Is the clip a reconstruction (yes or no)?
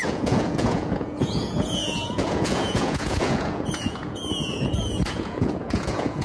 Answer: yes